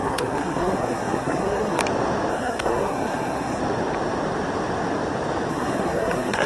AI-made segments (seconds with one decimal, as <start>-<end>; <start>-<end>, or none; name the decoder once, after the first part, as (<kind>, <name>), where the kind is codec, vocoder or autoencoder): 0.0-1.8 (codec, SNAC); 2.3-3.6; 5.5-6.5